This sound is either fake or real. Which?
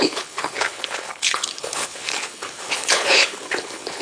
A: fake